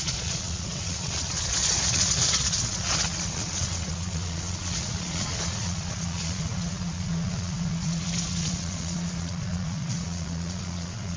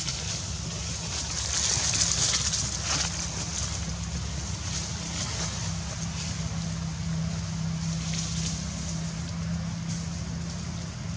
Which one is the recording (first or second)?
second